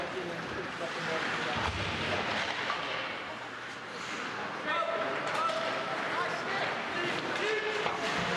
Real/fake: real